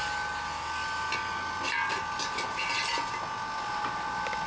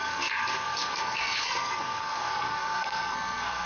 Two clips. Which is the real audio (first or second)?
first